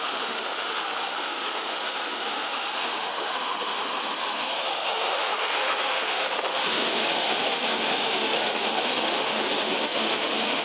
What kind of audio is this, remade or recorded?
remade